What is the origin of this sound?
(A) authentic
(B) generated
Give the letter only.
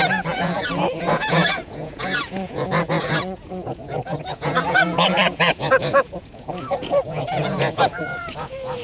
B